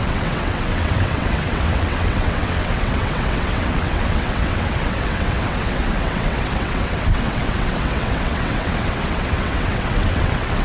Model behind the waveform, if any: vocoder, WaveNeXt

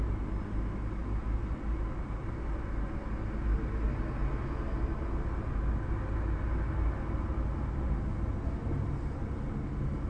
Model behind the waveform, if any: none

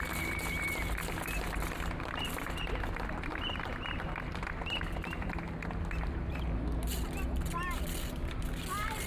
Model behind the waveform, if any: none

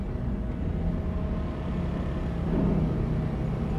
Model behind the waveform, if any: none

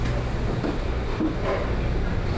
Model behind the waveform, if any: none